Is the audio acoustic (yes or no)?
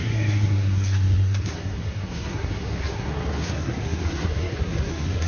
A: no